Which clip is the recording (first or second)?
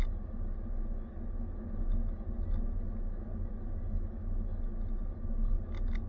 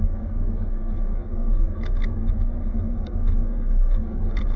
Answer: first